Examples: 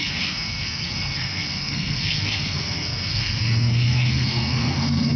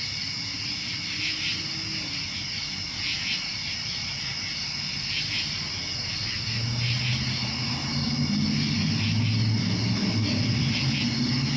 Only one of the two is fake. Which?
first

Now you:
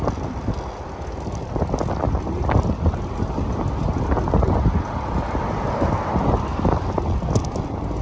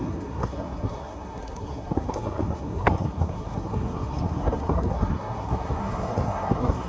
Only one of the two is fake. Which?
second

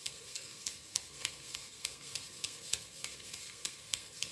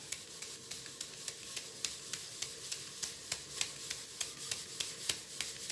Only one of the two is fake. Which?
first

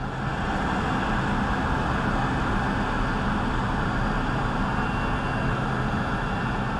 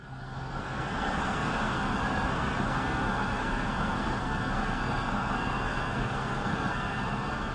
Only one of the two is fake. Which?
second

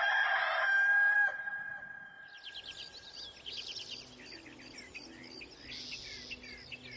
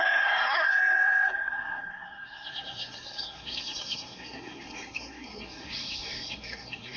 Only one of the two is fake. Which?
second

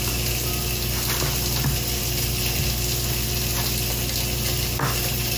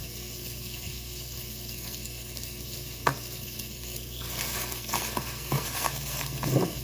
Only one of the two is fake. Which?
second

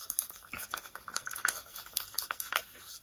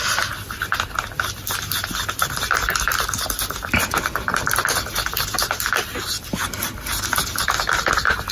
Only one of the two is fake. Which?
first